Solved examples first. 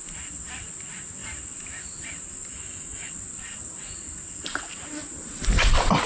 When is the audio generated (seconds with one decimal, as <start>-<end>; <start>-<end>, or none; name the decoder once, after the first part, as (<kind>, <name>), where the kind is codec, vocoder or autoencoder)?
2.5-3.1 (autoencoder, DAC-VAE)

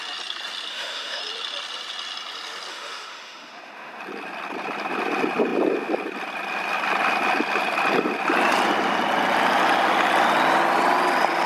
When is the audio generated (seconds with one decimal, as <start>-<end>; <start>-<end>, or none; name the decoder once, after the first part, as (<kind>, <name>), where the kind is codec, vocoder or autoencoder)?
0.7-1.2 (autoencoder, DAC-VAE); 2.7-4.0

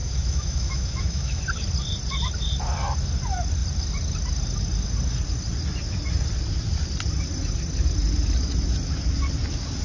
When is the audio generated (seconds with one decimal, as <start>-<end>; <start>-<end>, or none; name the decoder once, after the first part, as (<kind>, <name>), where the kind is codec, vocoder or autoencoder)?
0.0-1.4 (autoencoder, DAC-VAE)

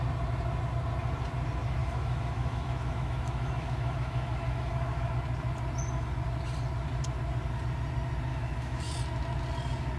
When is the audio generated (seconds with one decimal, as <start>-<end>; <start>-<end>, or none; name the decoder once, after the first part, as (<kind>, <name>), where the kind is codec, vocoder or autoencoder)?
1.8-5.1 (autoencoder, DAC-VAE); 8.3-8.9

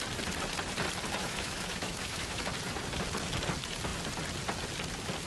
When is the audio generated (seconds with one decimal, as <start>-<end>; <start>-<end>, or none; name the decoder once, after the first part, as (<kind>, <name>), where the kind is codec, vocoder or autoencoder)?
1.2-2.4 (autoencoder, DAC-VAE)